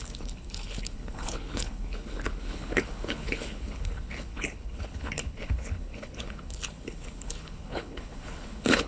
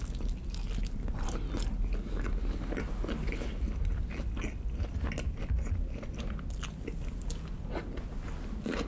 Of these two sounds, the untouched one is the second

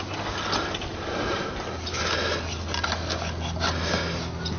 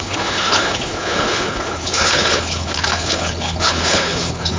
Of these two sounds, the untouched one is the first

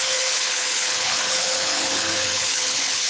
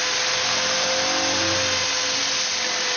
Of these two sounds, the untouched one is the second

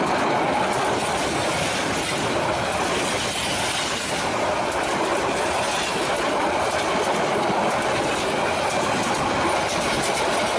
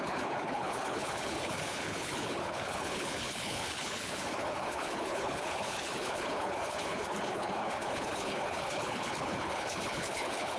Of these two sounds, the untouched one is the first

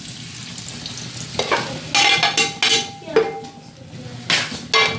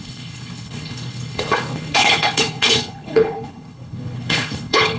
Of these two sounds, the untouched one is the first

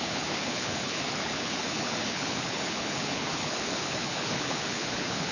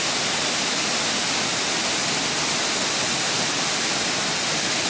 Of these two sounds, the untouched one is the second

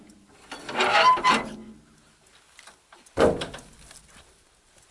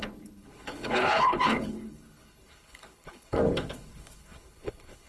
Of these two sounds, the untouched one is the first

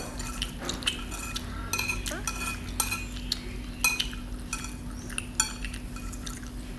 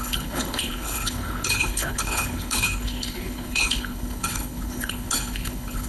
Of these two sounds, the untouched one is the first